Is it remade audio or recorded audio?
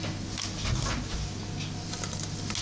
recorded